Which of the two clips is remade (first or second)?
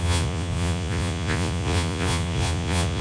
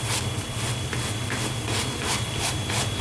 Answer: first